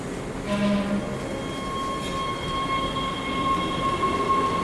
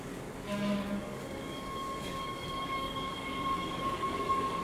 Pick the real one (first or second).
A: first